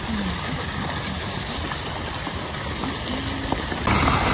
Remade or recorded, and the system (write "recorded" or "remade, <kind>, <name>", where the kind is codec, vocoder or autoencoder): recorded